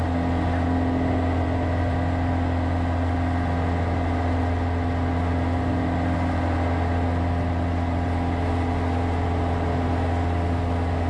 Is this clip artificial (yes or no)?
no